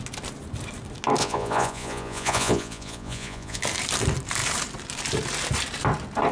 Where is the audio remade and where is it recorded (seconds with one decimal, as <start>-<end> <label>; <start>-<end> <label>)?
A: 0.0-1.2 recorded; 1.2-3.6 remade; 3.6-6.3 recorded